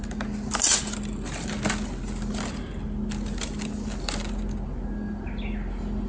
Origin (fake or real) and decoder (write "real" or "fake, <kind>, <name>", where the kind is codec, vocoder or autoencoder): real